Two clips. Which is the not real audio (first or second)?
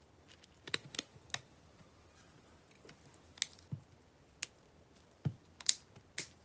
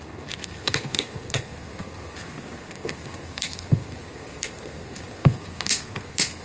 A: second